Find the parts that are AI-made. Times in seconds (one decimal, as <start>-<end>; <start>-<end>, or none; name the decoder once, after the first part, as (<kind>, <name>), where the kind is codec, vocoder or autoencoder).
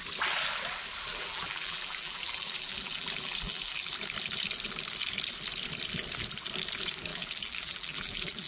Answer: 1.1-3.9 (vocoder, BigVGAN v2); 7.1-8.5